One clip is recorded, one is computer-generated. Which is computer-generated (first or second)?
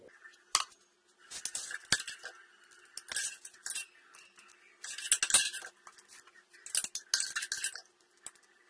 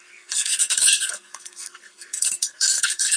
second